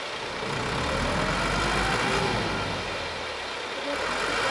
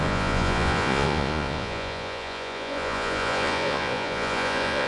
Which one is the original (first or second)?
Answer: first